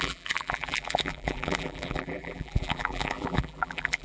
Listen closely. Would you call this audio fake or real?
fake